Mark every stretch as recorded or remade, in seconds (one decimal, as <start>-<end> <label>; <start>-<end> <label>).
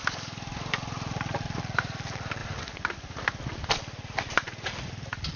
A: 0.0-0.7 recorded; 0.7-2.4 remade; 2.4-3.7 recorded; 3.7-5.4 remade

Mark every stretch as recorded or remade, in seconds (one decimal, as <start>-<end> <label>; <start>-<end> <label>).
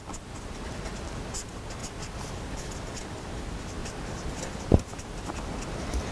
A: 0.0-3.8 recorded; 3.8-4.6 remade; 4.6-6.1 recorded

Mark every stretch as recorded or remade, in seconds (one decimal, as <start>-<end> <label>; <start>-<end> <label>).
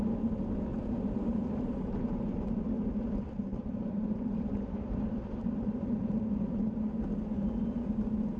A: 0.0-0.7 recorded; 0.7-2.5 remade; 2.5-3.5 recorded; 3.5-5.4 remade; 5.4-8.4 recorded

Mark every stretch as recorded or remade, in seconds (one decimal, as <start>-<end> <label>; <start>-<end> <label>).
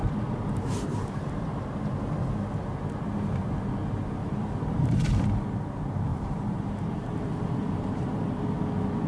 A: 0.0-1.9 remade; 1.9-4.2 recorded; 4.2-5.1 remade; 5.1-6.1 recorded; 6.1-8.6 remade; 8.6-9.1 recorded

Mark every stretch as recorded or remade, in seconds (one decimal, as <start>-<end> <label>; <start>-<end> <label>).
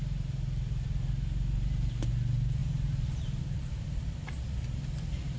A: 0.0-2.6 recorded; 2.6-3.4 remade; 3.4-5.4 recorded